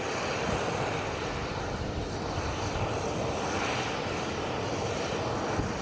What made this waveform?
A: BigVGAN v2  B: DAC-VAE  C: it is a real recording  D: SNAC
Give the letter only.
A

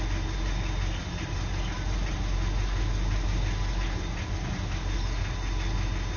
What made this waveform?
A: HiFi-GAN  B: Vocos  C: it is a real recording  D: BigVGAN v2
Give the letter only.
C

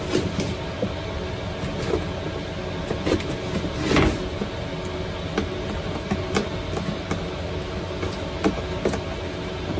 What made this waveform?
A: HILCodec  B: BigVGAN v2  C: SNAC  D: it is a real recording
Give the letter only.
D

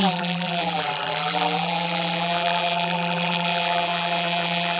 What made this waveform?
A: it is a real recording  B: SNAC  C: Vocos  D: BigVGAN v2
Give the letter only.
D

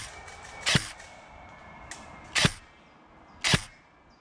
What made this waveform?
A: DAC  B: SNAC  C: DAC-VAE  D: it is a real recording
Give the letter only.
D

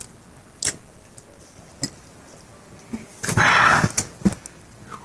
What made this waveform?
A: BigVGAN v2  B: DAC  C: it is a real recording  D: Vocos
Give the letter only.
C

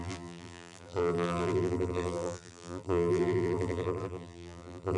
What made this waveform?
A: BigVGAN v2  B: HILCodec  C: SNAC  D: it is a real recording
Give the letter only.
A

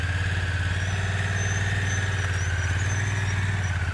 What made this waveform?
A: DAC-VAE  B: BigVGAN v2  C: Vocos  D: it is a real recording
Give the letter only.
D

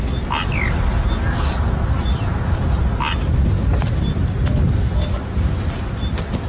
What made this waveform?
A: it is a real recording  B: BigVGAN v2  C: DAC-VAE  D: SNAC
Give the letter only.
A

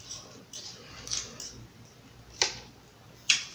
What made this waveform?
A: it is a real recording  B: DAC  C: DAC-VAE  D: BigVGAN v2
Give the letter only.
A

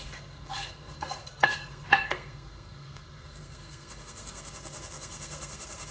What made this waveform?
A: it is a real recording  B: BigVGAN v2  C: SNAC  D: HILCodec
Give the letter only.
C